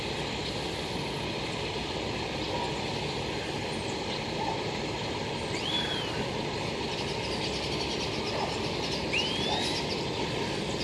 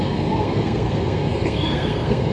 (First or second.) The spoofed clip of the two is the second